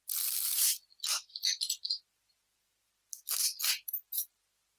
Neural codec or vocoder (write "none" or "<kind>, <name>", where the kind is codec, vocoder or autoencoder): none